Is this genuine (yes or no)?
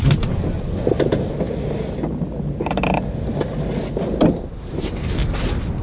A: yes